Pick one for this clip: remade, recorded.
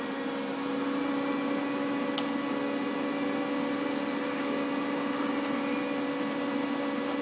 recorded